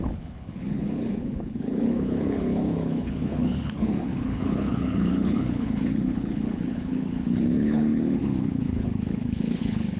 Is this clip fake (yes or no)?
yes